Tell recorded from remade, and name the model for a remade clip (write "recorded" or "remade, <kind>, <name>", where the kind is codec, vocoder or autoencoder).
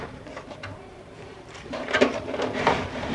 remade, vocoder, BigVGAN v2